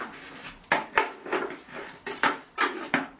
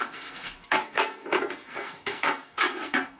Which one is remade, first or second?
second